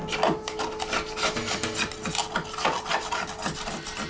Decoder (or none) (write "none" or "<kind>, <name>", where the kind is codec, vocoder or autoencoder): none